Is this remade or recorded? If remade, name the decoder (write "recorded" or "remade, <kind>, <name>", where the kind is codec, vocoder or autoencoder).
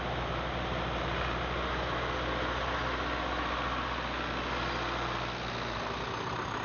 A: recorded